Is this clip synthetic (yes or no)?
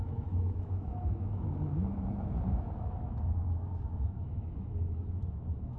yes